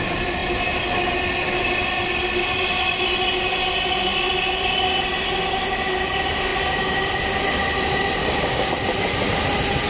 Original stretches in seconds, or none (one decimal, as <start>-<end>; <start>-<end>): 0.0-8.2; 8.7-9.9